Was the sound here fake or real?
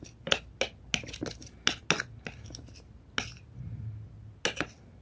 real